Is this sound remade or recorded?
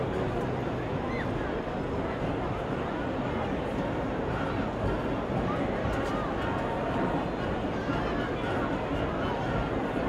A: recorded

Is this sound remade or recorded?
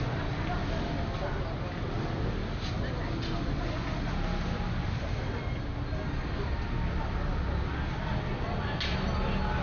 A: recorded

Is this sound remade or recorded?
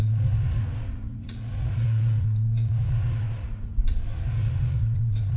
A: remade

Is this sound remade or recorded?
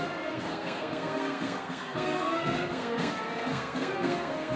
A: remade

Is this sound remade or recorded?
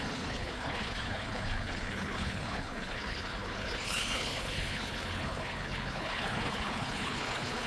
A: remade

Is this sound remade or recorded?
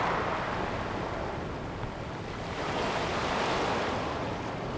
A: recorded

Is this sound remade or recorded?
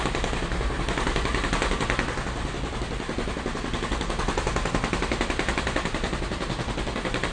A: recorded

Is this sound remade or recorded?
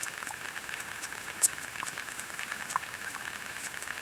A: remade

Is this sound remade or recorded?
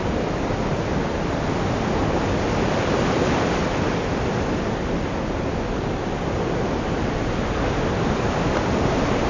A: recorded